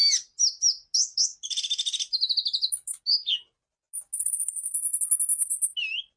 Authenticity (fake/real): real